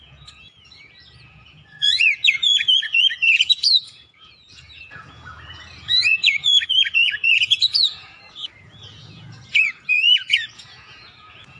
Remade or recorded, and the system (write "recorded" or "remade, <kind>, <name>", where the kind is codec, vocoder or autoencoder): remade, vocoder, Vocos